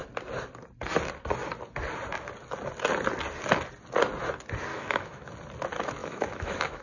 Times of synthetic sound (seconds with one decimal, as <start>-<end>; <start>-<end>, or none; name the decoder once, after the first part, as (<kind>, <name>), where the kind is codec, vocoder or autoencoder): 4.7-5.3 (autoencoder, DAC-VAE); 6.0-6.8